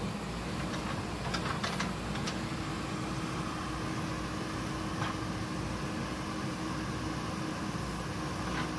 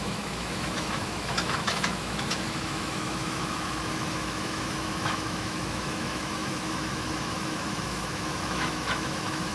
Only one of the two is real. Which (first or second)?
first